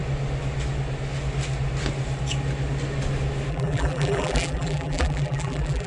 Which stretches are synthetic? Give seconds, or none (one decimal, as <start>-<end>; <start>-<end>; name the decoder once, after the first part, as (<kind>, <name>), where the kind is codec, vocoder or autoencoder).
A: 3.5-5.9 (vocoder, BigVGAN v2)